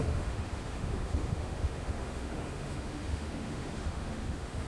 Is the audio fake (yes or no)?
yes